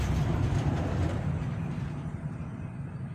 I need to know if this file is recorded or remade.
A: recorded